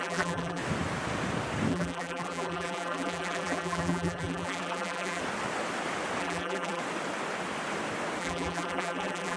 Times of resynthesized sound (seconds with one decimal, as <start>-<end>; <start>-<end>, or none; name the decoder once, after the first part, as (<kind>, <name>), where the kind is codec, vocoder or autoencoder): 0.0-0.6 (vocoder, BigVGAN v2); 1.7-5.2; 6.2-6.8; 8.2-9.4

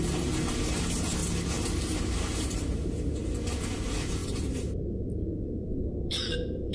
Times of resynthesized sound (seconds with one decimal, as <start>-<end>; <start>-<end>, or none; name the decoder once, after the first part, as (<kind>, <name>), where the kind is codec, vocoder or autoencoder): 0.0-1.2 (vocoder, BigVGAN v2); 1.8-3.2; 3.8-6.7

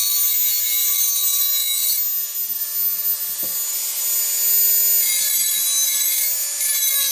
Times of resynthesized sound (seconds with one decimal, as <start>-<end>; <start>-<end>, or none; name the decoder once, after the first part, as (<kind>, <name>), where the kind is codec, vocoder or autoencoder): none

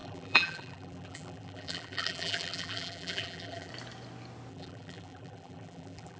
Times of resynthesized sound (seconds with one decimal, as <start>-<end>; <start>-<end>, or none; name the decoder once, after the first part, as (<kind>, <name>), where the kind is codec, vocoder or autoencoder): 0.0-3.7 (vocoder, BigVGAN v2); 4.5-6.2

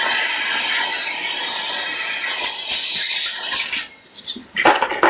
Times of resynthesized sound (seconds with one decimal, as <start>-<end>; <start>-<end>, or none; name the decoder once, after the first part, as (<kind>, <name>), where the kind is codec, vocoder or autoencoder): none

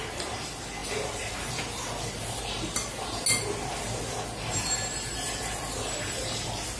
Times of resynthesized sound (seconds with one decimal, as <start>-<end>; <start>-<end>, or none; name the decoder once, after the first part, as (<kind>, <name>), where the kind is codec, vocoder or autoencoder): 0.8-2.4 (vocoder, BigVGAN v2)